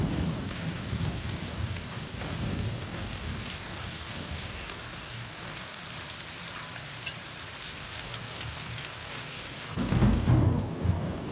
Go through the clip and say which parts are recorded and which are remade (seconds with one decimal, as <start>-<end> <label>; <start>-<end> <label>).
0.0-5.8 remade; 5.8-7.6 recorded; 7.6-11.3 remade